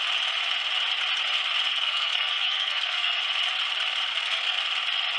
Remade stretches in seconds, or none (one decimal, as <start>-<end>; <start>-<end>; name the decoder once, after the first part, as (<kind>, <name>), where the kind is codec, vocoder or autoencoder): 1.7-3.2 (codec, SNAC); 4.1-4.6